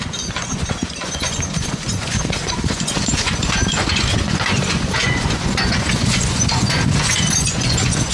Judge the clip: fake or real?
fake